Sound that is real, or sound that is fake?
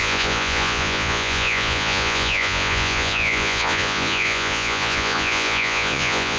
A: fake